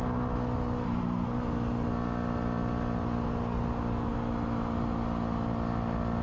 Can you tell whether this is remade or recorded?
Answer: recorded